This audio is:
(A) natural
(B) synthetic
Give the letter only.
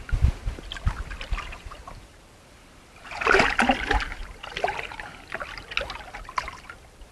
A